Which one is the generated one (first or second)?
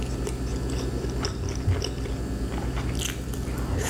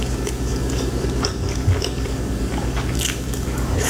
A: second